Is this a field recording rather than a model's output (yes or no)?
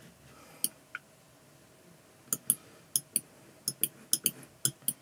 yes